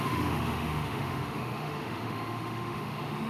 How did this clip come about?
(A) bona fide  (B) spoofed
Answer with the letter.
B